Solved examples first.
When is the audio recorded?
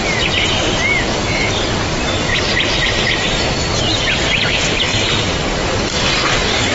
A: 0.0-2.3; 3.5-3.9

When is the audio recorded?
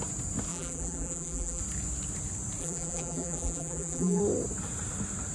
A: 0.0-0.5; 1.6-2.6; 4.2-5.3